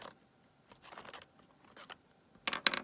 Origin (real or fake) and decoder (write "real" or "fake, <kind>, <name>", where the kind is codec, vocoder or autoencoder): real